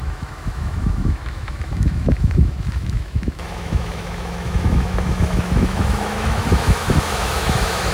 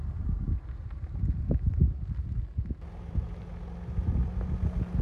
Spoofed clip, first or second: first